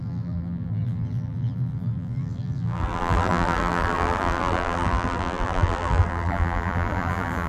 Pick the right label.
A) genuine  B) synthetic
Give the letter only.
B